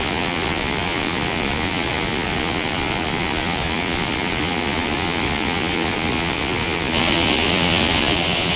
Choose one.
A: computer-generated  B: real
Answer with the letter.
A